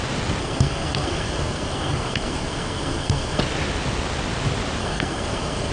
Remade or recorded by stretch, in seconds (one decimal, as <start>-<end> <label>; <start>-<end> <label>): 0.0-0.4 recorded; 0.4-3.4 remade; 3.4-4.8 recorded; 4.8-5.7 remade